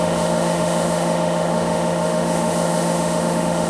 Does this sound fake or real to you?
fake